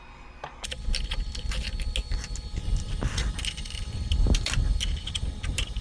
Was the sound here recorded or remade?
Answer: recorded